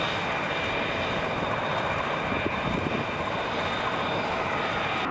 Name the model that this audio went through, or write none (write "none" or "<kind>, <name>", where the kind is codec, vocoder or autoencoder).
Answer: none